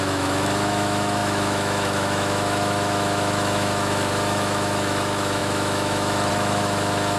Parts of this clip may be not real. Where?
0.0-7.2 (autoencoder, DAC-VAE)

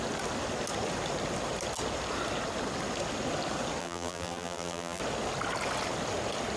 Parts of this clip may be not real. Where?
3.8-5.0 (vocoder, BigVGAN v2)

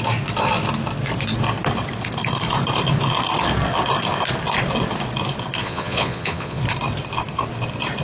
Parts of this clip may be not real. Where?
5.6-6.6 (vocoder, Vocos)